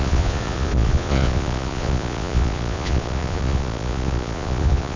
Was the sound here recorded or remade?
remade